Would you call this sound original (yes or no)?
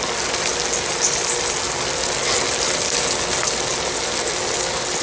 yes